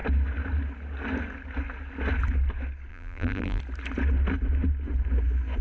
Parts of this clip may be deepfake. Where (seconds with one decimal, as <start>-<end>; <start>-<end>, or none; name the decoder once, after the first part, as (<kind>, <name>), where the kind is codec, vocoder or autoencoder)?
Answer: 2.9-3.6 (vocoder, BigVGAN v2)